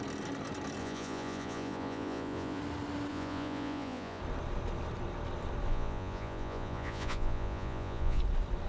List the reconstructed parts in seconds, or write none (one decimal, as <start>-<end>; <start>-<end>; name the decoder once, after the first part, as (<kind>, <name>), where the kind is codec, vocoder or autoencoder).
0.8-2.6 (vocoder, Vocos); 3.1-4.2; 5.7-8.2